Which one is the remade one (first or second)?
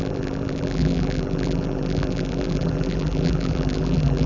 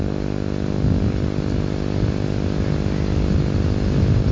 first